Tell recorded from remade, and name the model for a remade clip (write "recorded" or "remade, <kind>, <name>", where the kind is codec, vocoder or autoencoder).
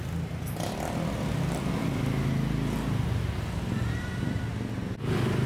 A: recorded